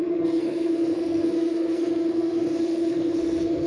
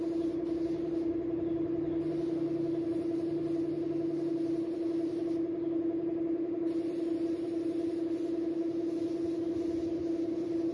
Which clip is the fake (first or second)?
first